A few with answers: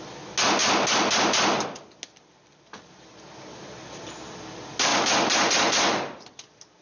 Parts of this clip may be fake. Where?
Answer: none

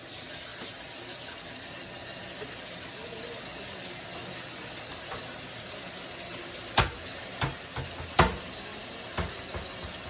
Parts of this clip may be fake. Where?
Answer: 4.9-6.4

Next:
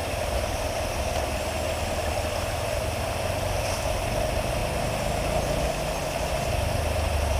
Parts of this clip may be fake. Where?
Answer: none

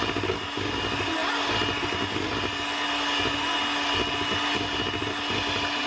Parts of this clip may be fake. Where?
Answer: none

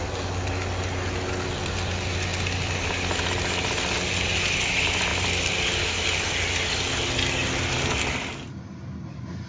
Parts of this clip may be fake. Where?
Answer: 2.3-3.3; 5.1-5.7

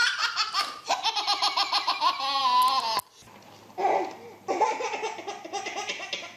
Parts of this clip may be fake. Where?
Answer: 0.0-1.9

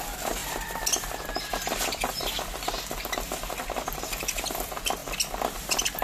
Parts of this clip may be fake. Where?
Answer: none